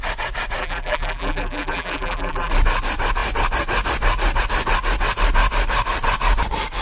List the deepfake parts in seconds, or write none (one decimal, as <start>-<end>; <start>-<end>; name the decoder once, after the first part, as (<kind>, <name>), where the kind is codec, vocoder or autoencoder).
0.6-2.5 (vocoder, BigVGAN v2)